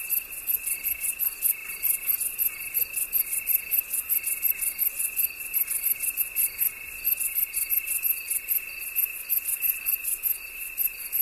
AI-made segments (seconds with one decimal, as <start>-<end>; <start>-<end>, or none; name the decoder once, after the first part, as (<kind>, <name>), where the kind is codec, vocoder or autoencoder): none